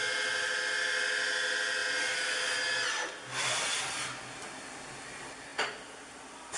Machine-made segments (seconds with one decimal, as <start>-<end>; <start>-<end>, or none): none